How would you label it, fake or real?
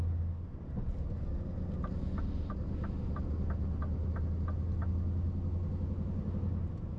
real